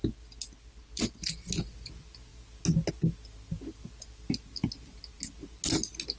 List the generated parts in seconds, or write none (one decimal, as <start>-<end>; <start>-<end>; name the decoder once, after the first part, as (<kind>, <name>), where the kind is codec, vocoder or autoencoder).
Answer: none